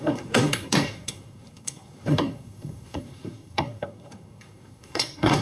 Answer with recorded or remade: remade